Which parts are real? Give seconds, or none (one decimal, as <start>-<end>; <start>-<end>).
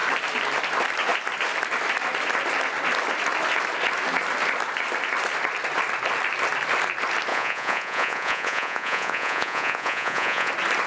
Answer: 0.0-7.3; 10.5-10.9